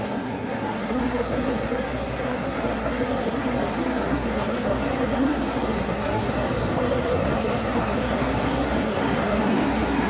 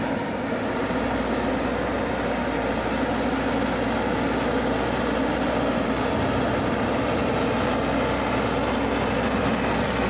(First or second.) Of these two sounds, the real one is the second